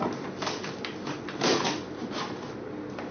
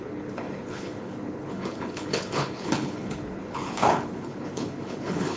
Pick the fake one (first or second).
second